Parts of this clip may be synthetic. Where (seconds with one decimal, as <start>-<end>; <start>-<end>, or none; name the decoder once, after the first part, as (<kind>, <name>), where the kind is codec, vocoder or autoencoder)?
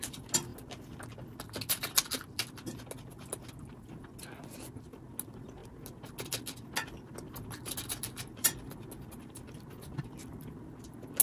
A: none